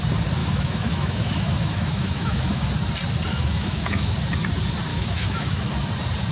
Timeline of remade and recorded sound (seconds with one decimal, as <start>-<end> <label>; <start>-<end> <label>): 0.0-0.4 recorded; 0.4-2.7 remade; 2.7-3.3 recorded; 3.3-4.1 remade; 4.1-4.9 recorded; 4.9-5.7 remade; 5.7-6.3 recorded